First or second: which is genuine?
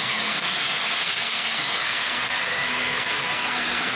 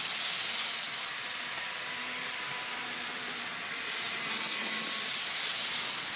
second